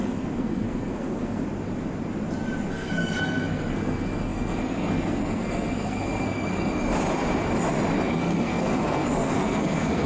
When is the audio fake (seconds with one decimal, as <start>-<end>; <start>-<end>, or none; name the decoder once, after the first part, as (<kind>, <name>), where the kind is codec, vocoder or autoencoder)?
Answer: 0.0-1.4 (codec, SNAC); 2.7-6.7; 8.1-10.1